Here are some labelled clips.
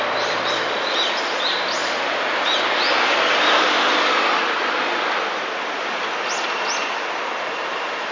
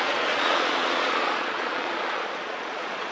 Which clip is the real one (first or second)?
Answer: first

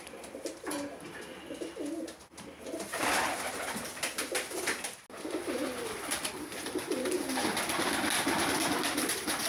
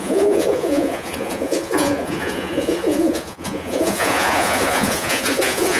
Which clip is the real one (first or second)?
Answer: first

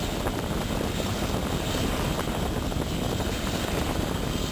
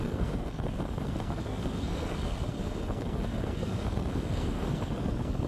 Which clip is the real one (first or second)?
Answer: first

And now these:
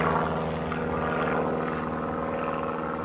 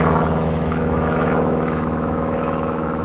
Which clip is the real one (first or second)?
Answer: first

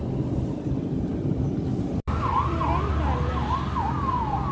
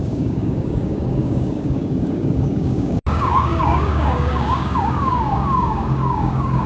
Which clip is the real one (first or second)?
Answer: first